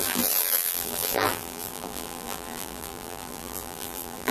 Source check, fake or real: fake